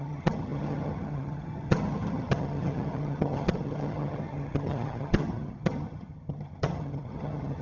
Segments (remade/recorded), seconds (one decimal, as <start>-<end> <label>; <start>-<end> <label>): 0.0-7.6 remade